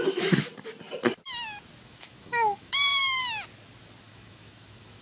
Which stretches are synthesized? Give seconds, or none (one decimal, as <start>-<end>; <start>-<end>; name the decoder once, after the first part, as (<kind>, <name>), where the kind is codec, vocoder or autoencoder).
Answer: 0.0-0.5 (autoencoder, DAC-VAE); 1.8-3.2; 4.0-5.0